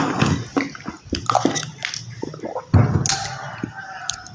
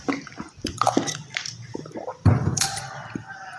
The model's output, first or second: second